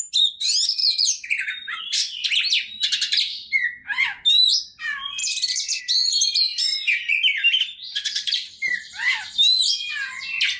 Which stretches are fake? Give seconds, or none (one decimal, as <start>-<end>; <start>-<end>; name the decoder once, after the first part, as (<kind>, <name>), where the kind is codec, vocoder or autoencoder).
0.8-1.8 (vocoder, BigVGAN v2); 5.2-5.8; 6.5-9.1